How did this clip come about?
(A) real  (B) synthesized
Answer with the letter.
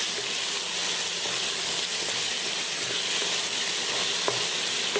A